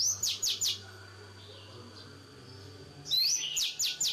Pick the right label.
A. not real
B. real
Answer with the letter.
A